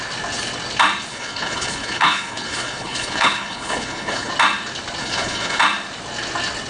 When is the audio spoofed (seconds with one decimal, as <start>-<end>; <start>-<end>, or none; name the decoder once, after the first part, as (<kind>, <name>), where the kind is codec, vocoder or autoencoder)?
1.1-4.3 (codec, HILCodec); 5.0-5.6